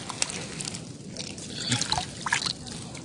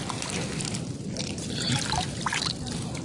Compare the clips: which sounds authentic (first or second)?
first